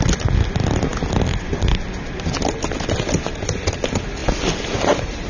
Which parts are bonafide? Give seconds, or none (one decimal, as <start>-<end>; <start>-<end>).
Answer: 0.0-5.3